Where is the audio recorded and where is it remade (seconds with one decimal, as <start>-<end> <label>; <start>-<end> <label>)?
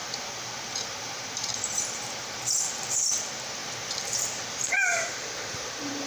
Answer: 0.0-3.0 remade; 3.0-3.6 recorded; 3.6-6.1 remade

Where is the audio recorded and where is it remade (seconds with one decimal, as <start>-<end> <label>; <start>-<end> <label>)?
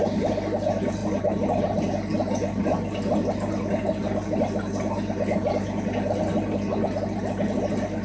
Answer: 0.0-8.0 recorded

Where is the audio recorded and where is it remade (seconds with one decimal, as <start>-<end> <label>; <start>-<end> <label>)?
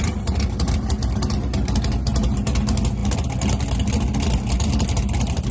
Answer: 0.0-5.5 recorded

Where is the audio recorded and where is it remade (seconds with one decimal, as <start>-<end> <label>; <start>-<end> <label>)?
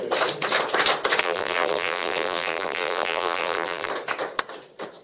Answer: 0.0-1.2 recorded; 1.2-3.9 remade; 3.9-5.0 recorded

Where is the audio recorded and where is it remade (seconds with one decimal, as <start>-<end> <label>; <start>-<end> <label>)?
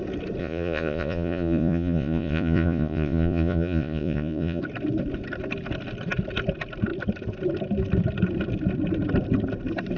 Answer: 0.0-0.4 recorded; 0.4-4.6 remade; 4.6-10.0 recorded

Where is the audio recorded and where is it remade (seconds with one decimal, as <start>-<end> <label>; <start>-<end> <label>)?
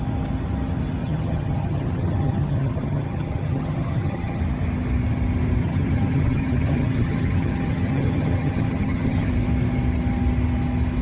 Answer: 0.0-1.0 recorded; 1.0-4.4 remade; 4.4-5.6 recorded; 5.6-9.3 remade; 9.3-11.0 recorded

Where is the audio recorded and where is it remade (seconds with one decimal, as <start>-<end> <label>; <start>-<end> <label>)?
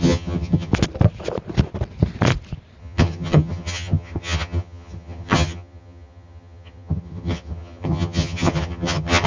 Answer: 0.0-0.7 remade; 0.7-2.8 recorded; 2.8-9.3 remade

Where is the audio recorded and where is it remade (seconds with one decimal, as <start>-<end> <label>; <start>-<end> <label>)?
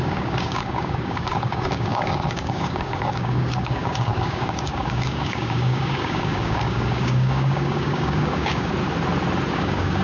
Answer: 0.0-8.7 remade; 8.7-9.5 recorded; 9.5-10.0 remade